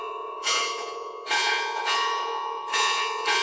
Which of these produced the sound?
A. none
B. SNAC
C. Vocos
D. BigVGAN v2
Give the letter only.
C